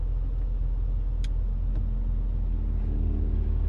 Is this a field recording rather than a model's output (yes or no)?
yes